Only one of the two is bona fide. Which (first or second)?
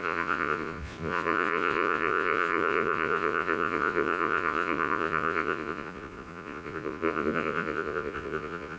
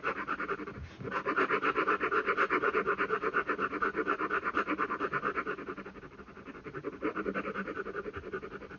second